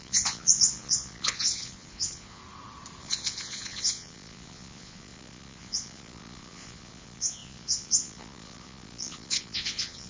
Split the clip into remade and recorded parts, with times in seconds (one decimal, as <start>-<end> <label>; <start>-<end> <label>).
0.0-2.4 remade; 2.4-3.0 recorded; 3.0-10.1 remade